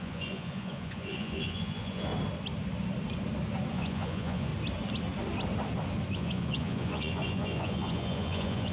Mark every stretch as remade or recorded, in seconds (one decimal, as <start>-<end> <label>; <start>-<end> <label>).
0.0-2.1 remade; 2.1-3.7 recorded; 3.7-4.5 remade; 4.5-6.1 recorded; 6.1-8.7 remade